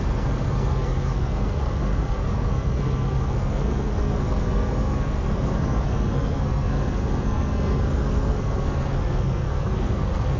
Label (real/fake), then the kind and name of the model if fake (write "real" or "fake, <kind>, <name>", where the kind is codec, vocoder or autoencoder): fake, codec, SNAC